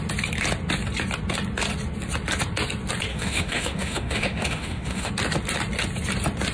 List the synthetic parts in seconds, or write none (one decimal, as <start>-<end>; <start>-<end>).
3.1-5.1